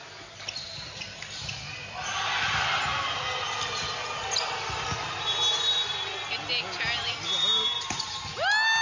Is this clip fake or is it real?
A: real